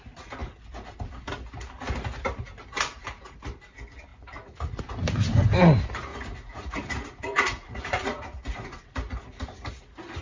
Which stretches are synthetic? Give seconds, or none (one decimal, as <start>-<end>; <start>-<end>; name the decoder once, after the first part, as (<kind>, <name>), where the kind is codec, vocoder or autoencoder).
4.1-4.8 (vocoder, Vocos); 6.1-8.8